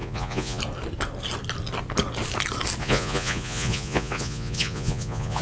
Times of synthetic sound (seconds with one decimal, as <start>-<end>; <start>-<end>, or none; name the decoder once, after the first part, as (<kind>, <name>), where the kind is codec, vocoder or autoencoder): 0.0-0.6 (vocoder, Vocos); 2.8-5.4